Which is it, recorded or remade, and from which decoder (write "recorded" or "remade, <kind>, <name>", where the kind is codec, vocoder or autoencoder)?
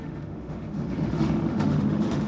remade, autoencoder, DAC-VAE